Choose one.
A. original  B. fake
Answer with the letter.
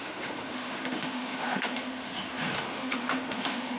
B